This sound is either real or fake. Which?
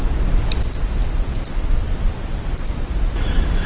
real